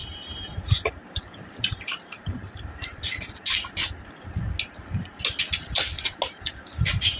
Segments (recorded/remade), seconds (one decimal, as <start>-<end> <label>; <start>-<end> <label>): 0.0-2.9 remade; 2.9-6.5 recorded; 6.5-7.2 remade